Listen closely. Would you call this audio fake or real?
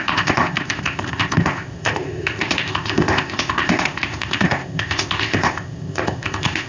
fake